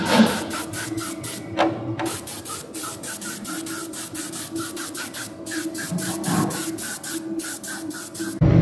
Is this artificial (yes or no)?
no